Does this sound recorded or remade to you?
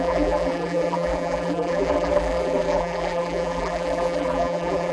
remade